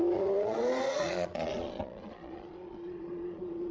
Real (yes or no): no